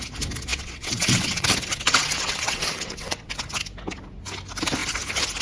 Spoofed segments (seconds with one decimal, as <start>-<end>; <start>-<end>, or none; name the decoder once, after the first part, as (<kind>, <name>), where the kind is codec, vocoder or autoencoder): 0.5-3.3 (vocoder, WaveNeXt)